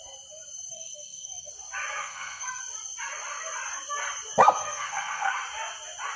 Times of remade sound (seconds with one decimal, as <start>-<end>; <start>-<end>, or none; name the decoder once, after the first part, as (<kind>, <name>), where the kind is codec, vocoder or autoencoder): 0.7-1.5 (codec, SNAC); 2.0-2.6; 4.6-5.3